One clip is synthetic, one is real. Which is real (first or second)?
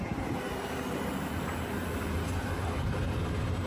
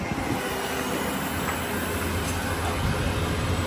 second